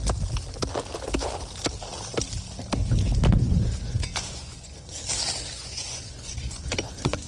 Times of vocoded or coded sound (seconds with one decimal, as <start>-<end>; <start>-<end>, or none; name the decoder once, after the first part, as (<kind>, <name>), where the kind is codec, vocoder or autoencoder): 3.3-5.0 (vocoder, Vocos); 5.5-7.3